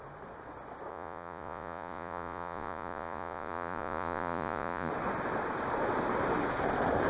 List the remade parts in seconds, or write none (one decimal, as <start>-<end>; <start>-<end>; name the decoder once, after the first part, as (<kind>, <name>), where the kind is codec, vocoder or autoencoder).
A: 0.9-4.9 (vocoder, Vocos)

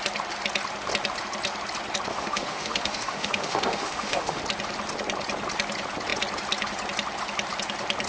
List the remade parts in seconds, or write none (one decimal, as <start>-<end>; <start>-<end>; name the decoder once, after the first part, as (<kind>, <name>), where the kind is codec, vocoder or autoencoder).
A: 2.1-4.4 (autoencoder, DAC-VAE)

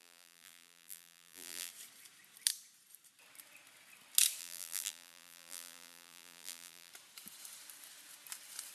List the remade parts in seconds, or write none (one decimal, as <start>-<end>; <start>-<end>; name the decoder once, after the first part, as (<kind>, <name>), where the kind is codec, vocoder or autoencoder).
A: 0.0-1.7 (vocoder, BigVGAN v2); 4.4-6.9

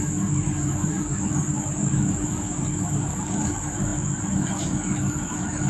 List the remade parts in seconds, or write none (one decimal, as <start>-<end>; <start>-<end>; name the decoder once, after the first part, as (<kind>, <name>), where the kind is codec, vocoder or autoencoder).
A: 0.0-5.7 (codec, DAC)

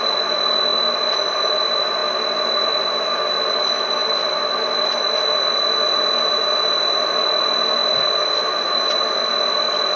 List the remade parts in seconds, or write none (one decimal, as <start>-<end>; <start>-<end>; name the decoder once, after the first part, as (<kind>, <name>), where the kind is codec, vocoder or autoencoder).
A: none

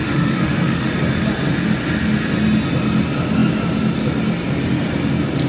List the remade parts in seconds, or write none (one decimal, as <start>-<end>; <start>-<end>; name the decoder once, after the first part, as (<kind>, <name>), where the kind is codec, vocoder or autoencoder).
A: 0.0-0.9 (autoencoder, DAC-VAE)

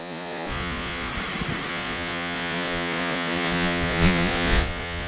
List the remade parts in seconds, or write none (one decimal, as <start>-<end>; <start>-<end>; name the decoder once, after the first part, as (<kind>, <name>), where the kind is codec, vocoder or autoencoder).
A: 0.0-1.1 (vocoder, Vocos); 1.7-5.1